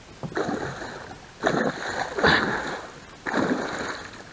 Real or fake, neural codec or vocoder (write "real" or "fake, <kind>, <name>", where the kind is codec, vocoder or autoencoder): real